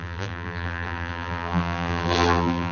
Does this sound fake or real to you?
fake